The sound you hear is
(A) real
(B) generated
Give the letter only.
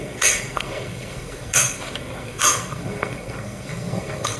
B